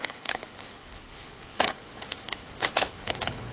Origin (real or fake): fake